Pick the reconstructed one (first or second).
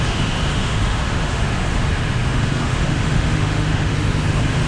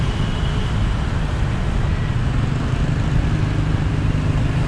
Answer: first